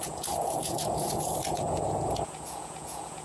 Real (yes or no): no